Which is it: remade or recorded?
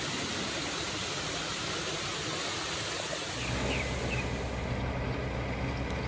recorded